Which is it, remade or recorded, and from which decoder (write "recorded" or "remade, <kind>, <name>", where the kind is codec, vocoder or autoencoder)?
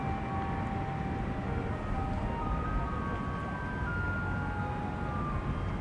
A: recorded